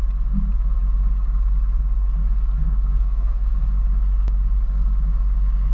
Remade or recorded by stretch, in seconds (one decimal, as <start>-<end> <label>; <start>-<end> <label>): 0.0-2.6 recorded; 2.6-3.6 remade; 3.6-5.7 recorded